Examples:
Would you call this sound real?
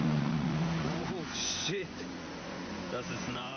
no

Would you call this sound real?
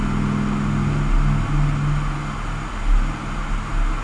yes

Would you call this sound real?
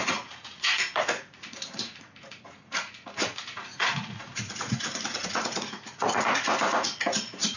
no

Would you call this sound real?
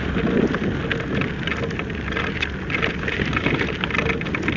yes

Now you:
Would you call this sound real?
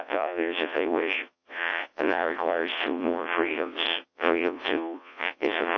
no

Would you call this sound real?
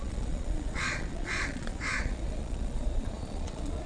no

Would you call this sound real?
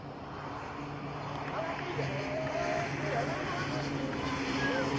yes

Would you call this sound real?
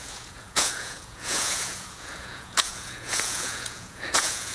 no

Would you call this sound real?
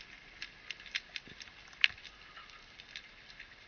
yes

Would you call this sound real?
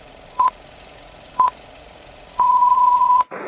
no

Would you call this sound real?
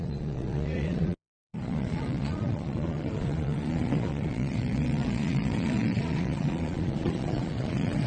no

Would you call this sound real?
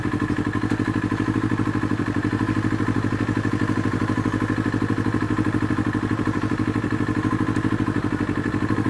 yes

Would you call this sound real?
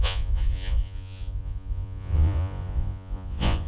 no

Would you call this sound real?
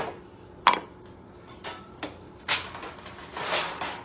yes